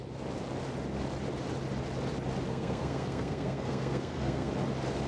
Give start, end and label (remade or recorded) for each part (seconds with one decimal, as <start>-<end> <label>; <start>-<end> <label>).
0.0-2.5 recorded; 2.5-4.5 remade; 4.5-5.1 recorded